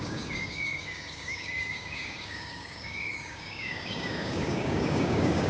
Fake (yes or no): yes